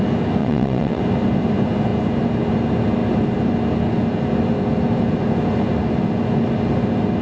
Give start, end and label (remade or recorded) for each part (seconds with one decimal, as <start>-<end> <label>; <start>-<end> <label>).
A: 0.0-0.4 recorded; 0.4-1.0 remade; 1.0-7.2 recorded